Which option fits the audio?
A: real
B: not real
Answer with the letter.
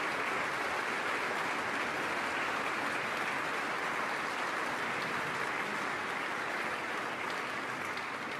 A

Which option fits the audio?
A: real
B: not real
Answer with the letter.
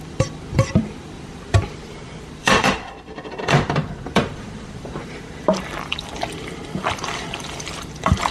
B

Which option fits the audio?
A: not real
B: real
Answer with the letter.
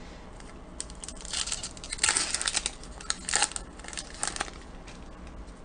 B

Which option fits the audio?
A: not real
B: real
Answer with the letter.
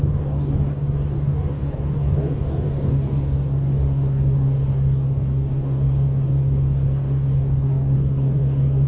A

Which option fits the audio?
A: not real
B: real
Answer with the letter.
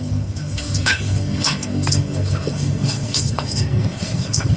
A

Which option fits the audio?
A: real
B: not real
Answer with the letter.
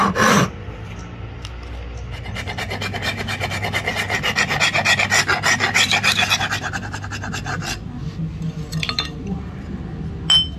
A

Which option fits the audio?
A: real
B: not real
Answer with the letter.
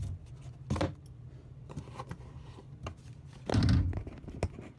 A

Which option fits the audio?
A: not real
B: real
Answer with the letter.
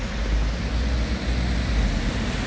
B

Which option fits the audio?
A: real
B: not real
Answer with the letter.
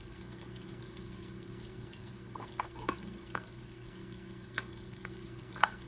B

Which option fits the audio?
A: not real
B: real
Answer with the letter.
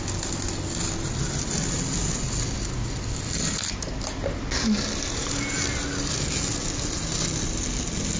B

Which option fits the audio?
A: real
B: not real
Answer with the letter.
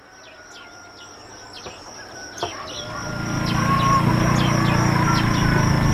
A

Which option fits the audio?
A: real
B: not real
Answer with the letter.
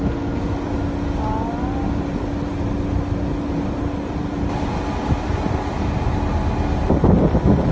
A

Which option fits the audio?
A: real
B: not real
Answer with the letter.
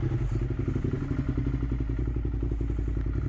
A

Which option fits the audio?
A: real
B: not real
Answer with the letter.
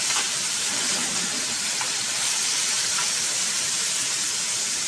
B